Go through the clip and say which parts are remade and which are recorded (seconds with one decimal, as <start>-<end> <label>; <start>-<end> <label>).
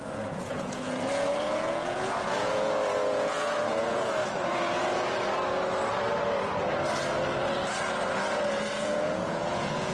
0.0-4.2 remade; 4.2-8.7 recorded; 8.7-9.9 remade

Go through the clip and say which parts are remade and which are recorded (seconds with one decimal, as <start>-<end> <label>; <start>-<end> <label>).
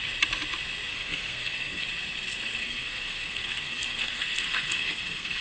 0.0-0.9 recorded; 0.9-1.8 remade; 1.8-2.6 recorded; 2.6-5.4 remade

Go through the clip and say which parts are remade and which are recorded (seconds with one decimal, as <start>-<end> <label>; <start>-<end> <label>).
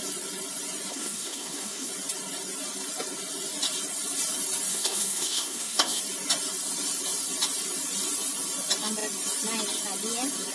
0.0-0.9 recorded; 0.9-1.9 remade; 1.9-4.7 recorded; 4.7-6.0 remade; 6.0-10.5 recorded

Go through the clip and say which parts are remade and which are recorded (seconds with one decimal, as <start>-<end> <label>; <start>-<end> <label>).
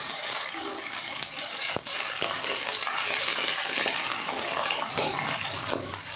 0.0-6.2 remade